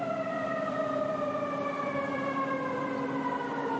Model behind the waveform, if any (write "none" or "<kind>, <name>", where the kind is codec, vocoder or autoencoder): vocoder, BigVGAN v2